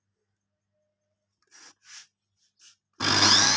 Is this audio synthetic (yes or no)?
no